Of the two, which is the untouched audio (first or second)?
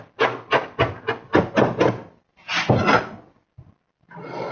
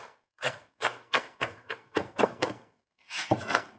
first